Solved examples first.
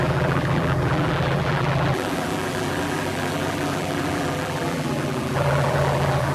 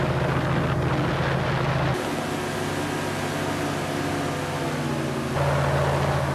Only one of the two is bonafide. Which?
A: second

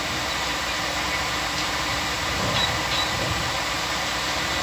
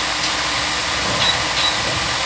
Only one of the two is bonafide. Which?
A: second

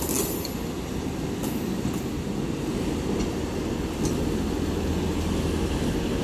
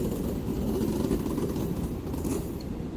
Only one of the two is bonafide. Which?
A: first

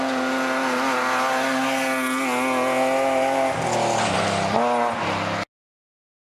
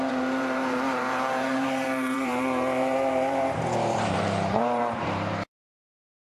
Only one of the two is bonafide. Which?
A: first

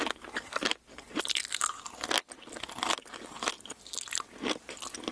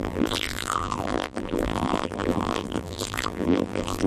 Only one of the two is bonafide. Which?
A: first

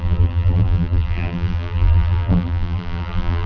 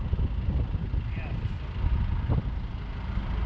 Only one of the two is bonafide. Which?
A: second